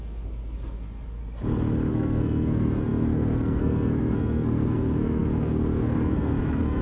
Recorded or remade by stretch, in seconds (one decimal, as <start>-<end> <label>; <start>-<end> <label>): 0.0-1.2 remade; 1.2-1.9 recorded; 1.9-6.8 remade